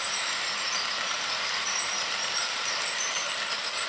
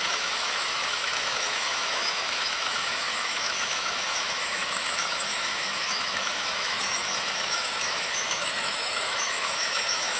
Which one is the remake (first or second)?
second